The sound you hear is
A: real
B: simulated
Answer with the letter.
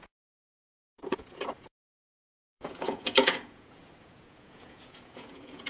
B